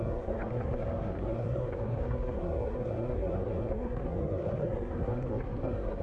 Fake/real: fake